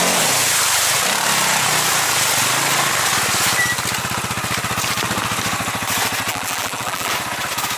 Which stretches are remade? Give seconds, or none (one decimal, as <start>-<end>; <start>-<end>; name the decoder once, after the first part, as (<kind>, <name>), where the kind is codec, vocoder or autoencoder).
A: 6.3-7.1 (vocoder, BigVGAN v2)